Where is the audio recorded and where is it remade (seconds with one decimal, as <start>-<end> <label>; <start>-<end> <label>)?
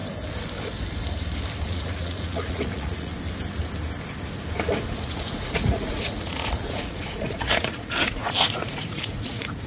0.0-1.6 recorded; 1.6-3.1 remade; 3.1-4.9 recorded; 4.9-9.7 remade